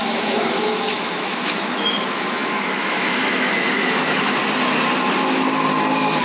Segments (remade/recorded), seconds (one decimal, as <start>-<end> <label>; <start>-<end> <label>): 0.0-4.4 remade; 4.4-6.2 recorded